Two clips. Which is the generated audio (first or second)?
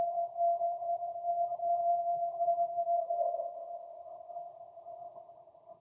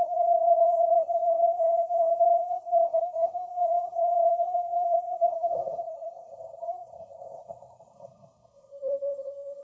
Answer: second